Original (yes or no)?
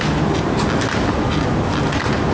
yes